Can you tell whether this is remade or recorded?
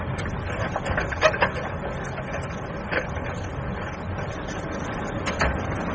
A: recorded